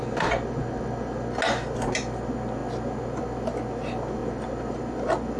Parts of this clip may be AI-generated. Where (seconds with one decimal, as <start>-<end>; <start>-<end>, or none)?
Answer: none

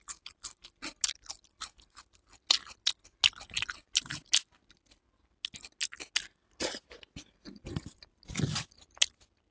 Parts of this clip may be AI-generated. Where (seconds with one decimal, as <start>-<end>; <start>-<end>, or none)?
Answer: none